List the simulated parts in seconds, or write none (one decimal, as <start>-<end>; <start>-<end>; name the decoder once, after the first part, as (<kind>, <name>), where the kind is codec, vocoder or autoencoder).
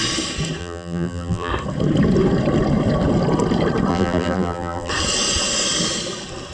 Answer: 0.6-1.5 (vocoder, BigVGAN v2); 3.9-4.9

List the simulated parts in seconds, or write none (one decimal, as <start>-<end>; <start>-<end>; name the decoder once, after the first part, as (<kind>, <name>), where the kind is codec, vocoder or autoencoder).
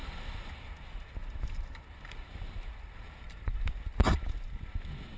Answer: 1.2-3.7 (vocoder, BigVGAN v2)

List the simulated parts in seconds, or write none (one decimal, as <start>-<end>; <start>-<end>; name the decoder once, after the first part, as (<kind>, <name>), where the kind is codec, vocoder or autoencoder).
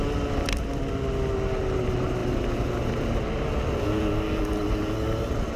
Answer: none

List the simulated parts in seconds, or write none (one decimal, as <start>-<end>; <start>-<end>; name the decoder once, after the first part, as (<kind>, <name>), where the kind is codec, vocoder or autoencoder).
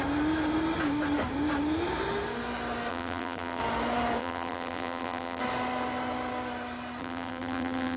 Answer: 2.9-3.6 (vocoder, BigVGAN v2); 4.2-5.4; 7.0-8.0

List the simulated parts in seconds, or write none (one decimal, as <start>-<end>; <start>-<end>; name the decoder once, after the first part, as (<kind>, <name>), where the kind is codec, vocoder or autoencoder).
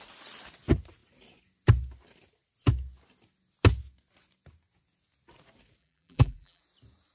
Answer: 5.8-6.6 (vocoder, BigVGAN v2)